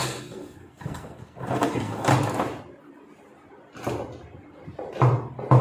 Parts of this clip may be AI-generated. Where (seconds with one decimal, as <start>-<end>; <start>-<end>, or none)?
0.0-2.1